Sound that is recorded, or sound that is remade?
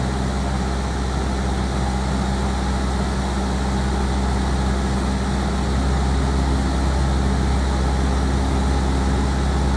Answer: recorded